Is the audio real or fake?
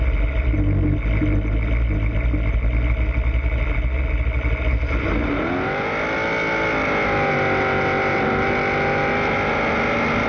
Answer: real